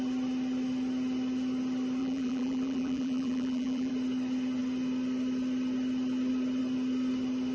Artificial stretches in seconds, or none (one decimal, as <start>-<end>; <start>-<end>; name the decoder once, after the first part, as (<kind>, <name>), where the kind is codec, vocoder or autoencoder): 2.0-3.9 (vocoder, BigVGAN v2)